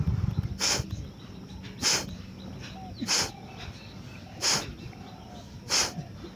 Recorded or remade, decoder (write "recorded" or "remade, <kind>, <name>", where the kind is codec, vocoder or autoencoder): recorded